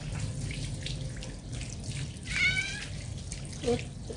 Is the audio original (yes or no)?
yes